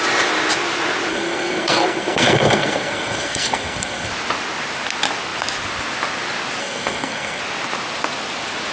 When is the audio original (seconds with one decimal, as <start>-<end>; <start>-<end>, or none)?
0.0-1.1; 4.1-6.6; 7.4-8.7